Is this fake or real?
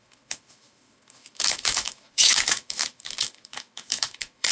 fake